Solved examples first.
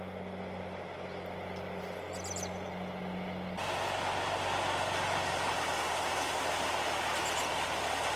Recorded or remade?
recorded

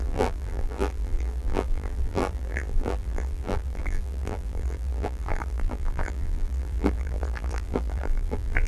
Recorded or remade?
remade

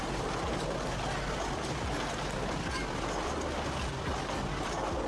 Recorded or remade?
recorded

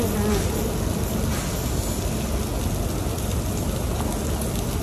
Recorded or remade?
recorded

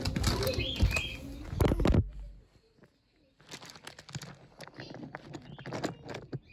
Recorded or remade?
recorded